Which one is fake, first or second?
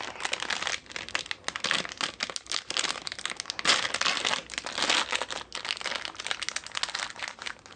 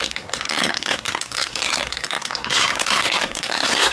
second